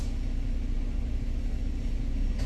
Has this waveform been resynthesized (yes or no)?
no